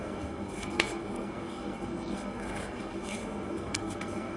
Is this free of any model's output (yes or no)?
no